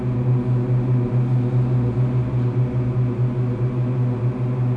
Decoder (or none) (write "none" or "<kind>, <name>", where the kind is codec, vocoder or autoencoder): none